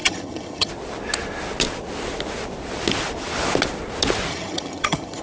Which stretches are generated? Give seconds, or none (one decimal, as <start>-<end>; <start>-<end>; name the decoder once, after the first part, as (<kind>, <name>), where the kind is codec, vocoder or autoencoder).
0.0-0.7 (vocoder, HiFi-GAN); 4.3-5.2